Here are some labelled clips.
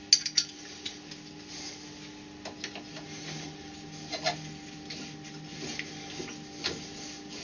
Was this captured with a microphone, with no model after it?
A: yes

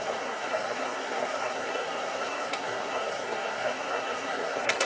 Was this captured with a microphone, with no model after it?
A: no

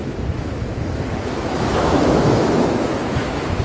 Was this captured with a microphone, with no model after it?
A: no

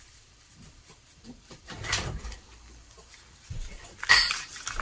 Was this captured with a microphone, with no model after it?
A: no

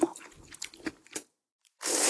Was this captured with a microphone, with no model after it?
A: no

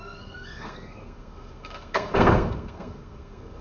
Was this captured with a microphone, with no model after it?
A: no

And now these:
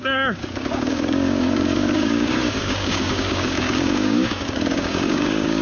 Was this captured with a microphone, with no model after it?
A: no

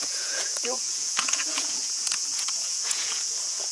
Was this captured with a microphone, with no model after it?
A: no